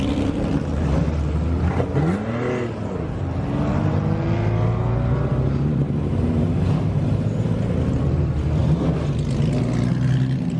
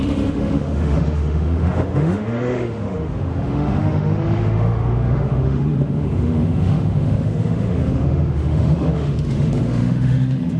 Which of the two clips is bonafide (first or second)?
first